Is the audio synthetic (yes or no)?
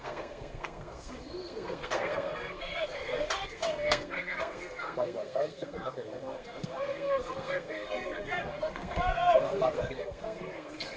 yes